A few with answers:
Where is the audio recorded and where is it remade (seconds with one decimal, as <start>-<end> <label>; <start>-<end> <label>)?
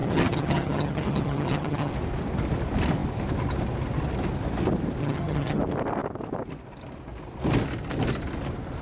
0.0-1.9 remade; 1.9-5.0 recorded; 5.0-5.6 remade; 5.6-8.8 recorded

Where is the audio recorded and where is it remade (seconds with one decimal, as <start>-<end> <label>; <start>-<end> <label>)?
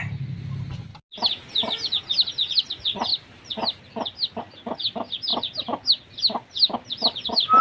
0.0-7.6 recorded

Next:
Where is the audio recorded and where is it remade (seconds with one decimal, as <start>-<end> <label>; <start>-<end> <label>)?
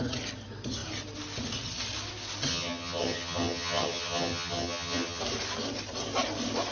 0.0-2.5 recorded; 2.5-5.2 remade; 5.2-6.7 recorded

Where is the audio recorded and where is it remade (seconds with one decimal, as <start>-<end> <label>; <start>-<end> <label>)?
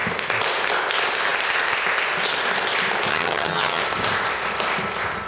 0.0-3.1 recorded; 3.1-3.8 remade; 3.8-5.3 recorded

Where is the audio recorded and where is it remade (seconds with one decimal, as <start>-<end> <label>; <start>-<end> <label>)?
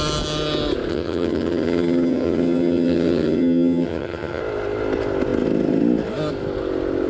0.0-0.9 recorded; 0.9-4.4 remade; 4.4-7.1 recorded